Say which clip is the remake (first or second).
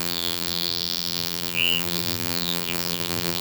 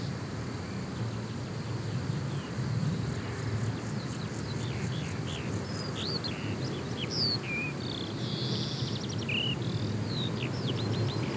first